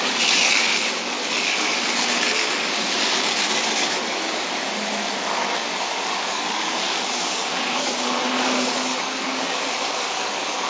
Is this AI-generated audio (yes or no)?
yes